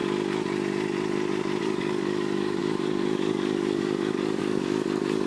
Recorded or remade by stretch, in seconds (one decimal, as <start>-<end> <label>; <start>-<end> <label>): 0.0-1.6 recorded; 1.6-5.3 remade